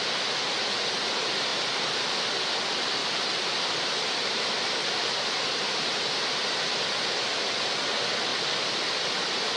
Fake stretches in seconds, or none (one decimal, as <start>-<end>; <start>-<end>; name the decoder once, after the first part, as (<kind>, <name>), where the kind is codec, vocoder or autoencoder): 1.5-2.1 (vocoder, BigVGAN v2); 3.0-7.7